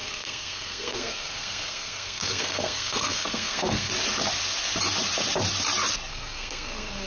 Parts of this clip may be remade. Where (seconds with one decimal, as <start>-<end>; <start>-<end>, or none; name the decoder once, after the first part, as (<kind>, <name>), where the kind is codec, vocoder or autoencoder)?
0.0-3.9 (codec, SNAC); 6.1-7.1